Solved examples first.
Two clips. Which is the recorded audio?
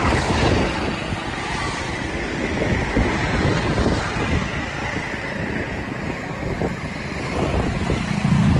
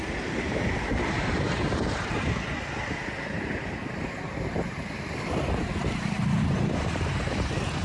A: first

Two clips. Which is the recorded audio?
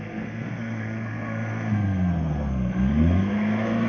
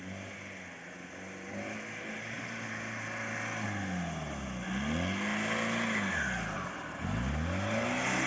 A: second